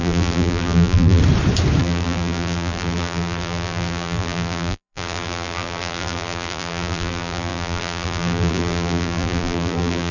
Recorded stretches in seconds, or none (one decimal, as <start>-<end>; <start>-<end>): 1.2-1.8